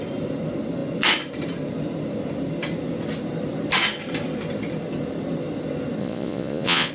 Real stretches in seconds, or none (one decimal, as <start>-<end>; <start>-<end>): 0.0-6.0